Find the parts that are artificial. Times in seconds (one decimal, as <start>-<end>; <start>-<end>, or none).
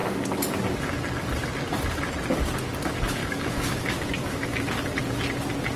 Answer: 3.2-4.7